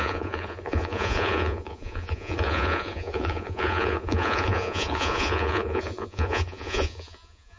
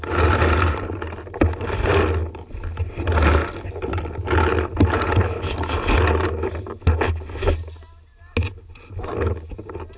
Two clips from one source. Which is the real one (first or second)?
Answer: second